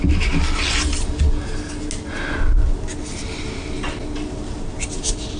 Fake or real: real